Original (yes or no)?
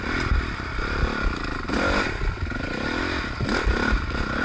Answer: yes